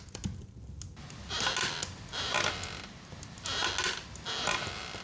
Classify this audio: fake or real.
real